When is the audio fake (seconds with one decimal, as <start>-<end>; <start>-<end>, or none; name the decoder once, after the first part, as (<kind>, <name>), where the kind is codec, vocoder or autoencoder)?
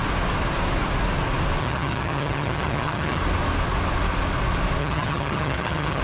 1.6-3.2 (vocoder, HiFi-GAN); 4.8-6.0